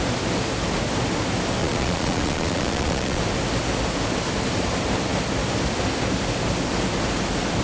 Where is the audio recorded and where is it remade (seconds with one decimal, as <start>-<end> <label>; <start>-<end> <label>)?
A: 0.0-1.6 recorded; 1.6-3.2 remade; 3.2-7.6 recorded